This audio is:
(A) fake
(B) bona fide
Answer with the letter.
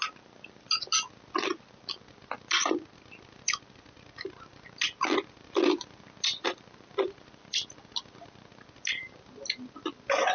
B